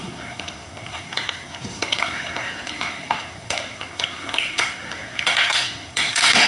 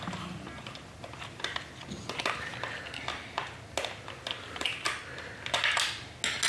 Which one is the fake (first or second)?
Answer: first